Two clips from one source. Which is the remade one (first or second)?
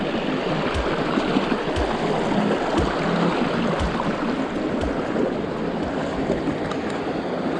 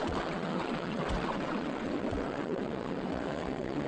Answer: second